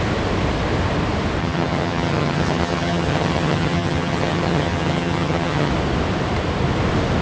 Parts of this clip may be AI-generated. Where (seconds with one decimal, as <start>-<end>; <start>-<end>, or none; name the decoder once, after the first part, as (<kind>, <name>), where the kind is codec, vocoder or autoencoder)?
1.4-5.7 (vocoder, HiFi-GAN)